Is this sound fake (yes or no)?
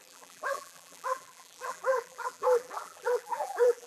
yes